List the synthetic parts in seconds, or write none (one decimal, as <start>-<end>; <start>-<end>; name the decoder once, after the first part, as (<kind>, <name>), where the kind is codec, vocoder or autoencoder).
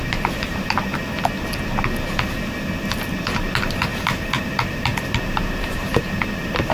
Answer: 0.0-0.9 (vocoder, BigVGAN v2); 3.1-6.7